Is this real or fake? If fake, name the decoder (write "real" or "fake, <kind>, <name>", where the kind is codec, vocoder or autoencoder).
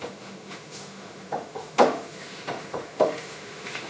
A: fake, autoencoder, DAC-VAE